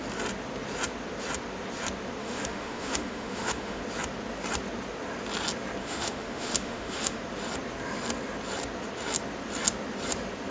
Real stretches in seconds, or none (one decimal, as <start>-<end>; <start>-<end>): 0.0-2.2; 3.8-5.8; 7.2-10.5